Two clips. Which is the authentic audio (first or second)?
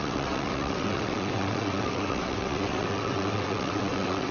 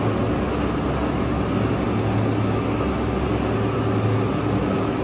second